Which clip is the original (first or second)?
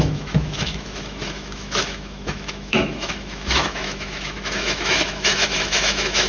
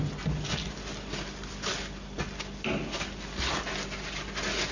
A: second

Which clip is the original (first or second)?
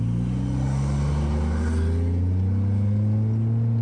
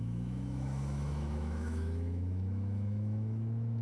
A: first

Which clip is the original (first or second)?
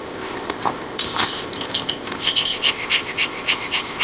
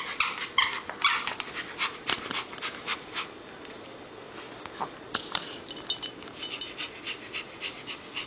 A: second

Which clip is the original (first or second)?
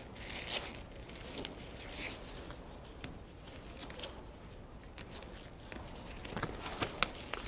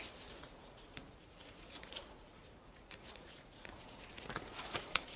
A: first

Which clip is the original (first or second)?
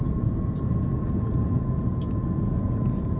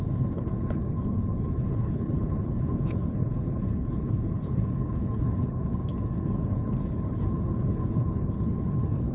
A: first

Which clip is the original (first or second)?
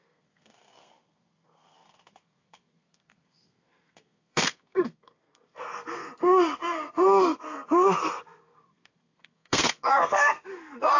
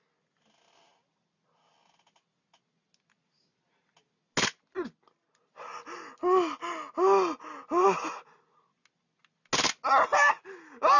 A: second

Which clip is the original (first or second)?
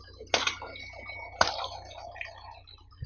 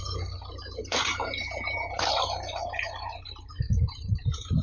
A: first